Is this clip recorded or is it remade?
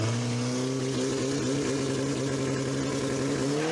recorded